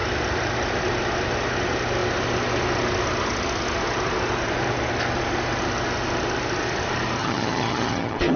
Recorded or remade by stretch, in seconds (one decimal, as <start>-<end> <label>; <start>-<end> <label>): 0.0-7.2 recorded; 7.2-8.4 remade